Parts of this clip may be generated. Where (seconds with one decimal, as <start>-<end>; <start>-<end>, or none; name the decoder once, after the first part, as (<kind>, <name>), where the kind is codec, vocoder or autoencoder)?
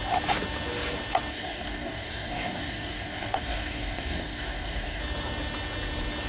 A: 1.3-5.0 (codec, DAC)